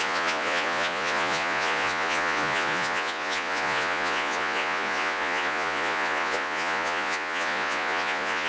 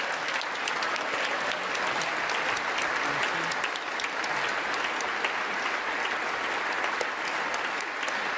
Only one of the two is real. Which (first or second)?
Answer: second